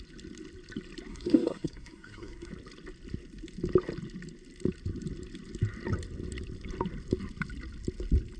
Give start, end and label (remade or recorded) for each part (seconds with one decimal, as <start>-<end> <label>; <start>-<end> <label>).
0.0-1.1 recorded; 1.1-2.5 remade; 2.5-8.4 recorded